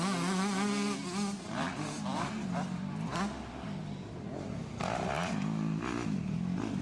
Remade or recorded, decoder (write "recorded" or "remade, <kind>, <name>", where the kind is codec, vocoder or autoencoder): recorded